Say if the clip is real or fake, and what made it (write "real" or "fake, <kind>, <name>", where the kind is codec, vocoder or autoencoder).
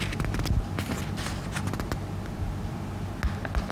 real